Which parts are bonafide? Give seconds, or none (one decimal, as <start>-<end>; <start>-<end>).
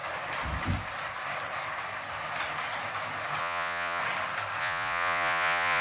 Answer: 0.0-3.4; 4.0-4.6